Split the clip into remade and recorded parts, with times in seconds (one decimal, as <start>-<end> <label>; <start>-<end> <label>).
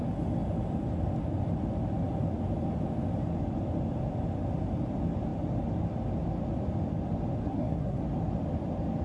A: 0.0-7.4 recorded; 7.4-8.0 remade; 8.0-9.0 recorded